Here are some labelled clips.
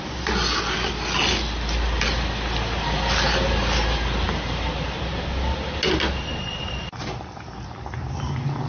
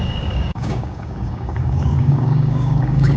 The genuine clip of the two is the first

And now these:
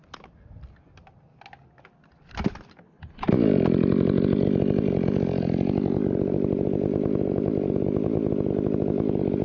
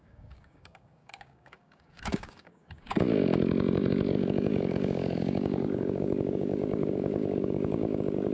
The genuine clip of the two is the first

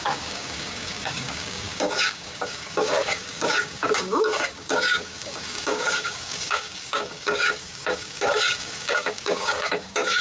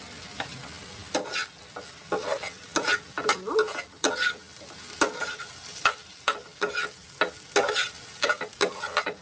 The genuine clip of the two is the second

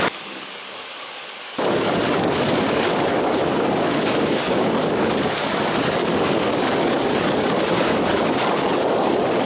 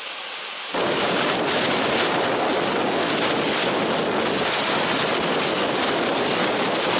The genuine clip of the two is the second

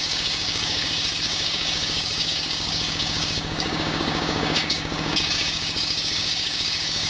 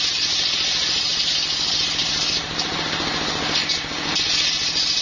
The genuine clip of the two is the second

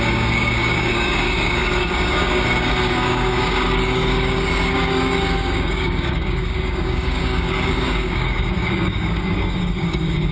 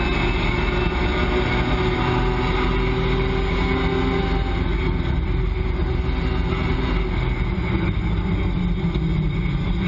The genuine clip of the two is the second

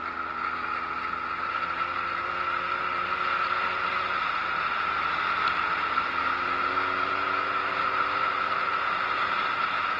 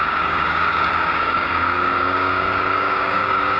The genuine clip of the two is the first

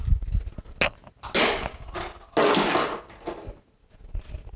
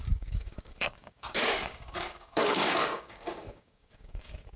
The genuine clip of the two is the first